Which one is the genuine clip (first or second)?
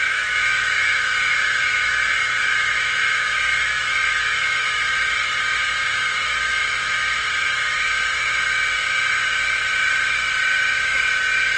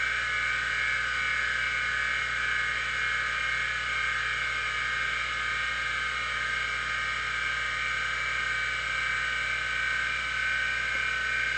second